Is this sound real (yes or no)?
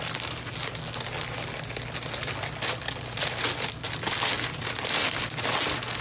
yes